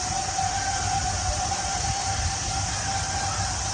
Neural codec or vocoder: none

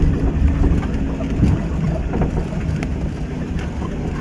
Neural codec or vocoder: none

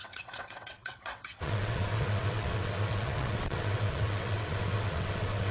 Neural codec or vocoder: vocoder, WaveNeXt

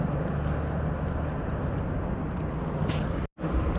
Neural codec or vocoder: none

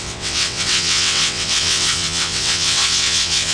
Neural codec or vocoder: vocoder, WaveNeXt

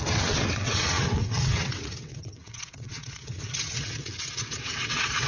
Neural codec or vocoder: vocoder, WaveNeXt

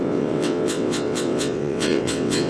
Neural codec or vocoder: vocoder, WaveNeXt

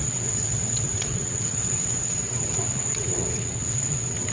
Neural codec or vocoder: vocoder, WaveNeXt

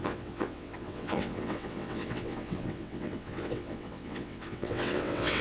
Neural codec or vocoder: vocoder, WaveNeXt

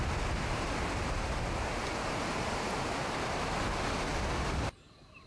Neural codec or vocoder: none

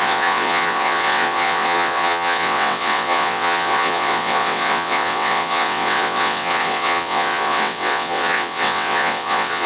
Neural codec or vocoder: vocoder, WaveNeXt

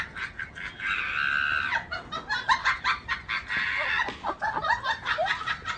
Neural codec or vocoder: none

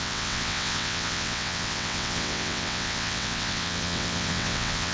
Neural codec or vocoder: vocoder, WaveNeXt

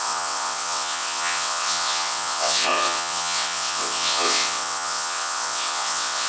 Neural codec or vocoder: vocoder, WaveNeXt